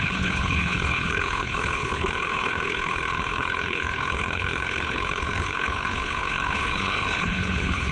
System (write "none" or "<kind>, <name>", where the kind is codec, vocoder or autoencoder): codec, HILCodec